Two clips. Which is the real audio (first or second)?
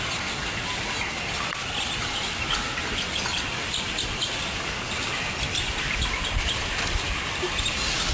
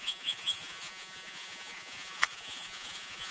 first